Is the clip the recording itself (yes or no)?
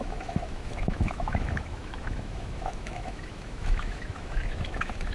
no